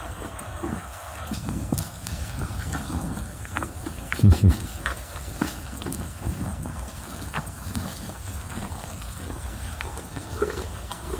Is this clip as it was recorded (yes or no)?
no